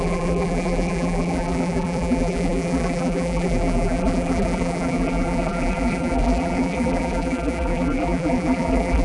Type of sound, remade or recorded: remade